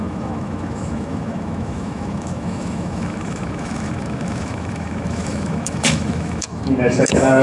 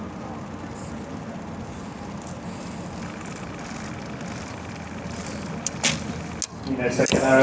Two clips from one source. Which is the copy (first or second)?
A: first